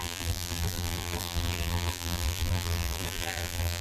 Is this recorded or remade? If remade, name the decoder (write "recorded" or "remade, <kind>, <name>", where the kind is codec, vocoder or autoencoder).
remade, vocoder, BigVGAN v2